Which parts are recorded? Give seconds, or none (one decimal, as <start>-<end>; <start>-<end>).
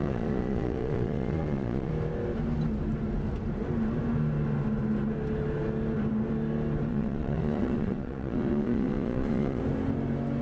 1.9-6.9; 9.6-10.4